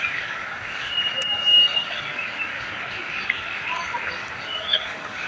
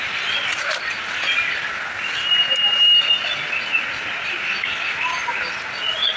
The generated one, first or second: first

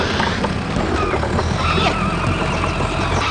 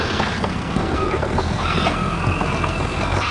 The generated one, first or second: second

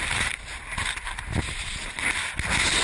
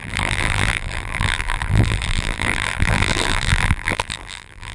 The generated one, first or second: second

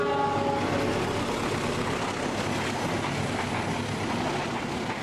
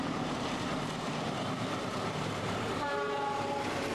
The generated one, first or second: second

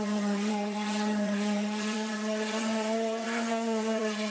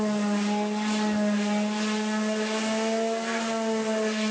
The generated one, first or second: first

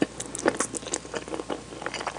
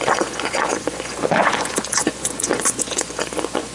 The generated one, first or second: second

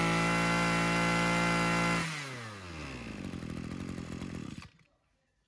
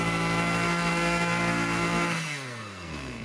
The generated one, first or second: second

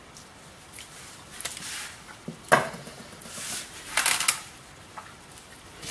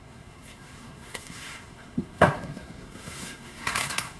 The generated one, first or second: second